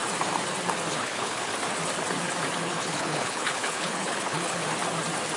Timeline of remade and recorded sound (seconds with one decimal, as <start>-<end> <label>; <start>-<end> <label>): 0.0-1.0 recorded; 1.0-1.5 remade; 1.5-2.6 recorded; 2.6-4.6 remade; 4.6-5.4 recorded

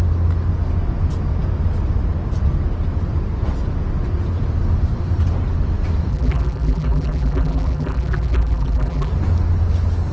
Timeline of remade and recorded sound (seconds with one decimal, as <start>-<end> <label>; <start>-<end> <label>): 0.0-6.1 recorded; 6.1-9.1 remade; 9.1-10.1 recorded

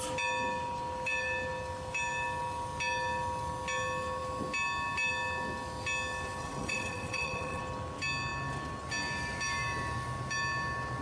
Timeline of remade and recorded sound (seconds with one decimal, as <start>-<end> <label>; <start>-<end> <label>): 0.0-6.4 recorded; 6.4-7.6 remade; 7.6-11.0 recorded

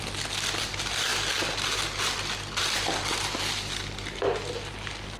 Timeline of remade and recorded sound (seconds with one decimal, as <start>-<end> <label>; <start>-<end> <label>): 0.0-5.2 recorded